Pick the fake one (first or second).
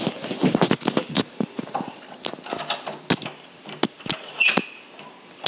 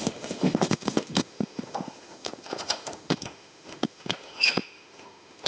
second